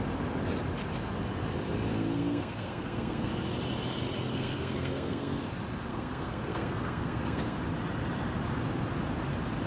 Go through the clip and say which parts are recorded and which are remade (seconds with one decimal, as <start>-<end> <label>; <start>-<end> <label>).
0.0-1.9 recorded; 1.9-3.3 remade; 3.3-4.3 recorded; 4.3-5.4 remade; 5.4-5.9 recorded; 5.9-7.6 remade; 7.6-9.7 recorded